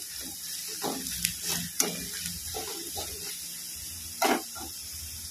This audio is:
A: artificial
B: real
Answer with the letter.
B